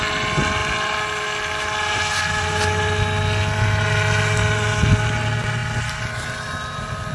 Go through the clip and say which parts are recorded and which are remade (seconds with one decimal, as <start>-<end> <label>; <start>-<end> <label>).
0.0-7.1 recorded